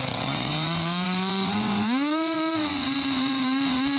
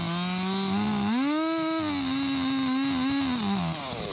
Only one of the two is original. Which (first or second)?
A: second